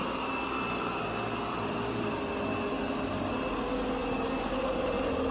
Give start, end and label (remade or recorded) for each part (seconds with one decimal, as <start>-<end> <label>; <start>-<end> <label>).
0.0-5.3 recorded